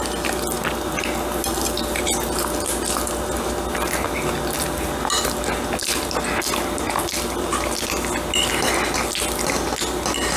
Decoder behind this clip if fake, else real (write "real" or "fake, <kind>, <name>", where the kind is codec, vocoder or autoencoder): real